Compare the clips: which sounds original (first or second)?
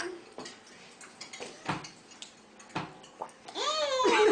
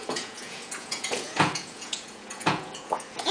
first